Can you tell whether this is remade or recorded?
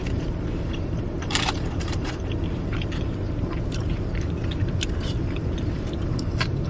remade